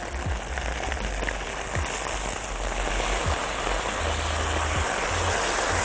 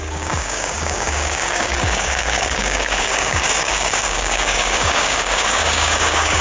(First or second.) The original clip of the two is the first